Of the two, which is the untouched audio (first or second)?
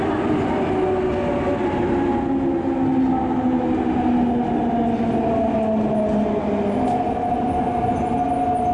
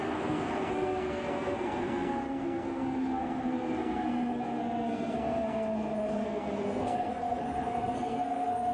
first